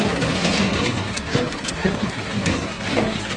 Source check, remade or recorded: remade